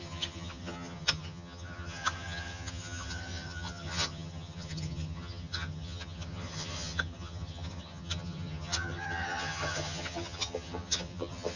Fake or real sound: fake